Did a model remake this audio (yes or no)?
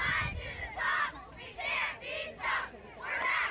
no